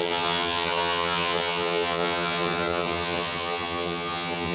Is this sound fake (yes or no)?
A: yes